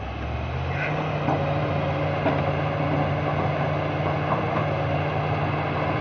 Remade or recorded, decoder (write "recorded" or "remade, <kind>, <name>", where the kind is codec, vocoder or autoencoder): recorded